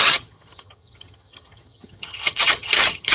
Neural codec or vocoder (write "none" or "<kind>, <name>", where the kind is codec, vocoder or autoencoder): vocoder, HiFi-GAN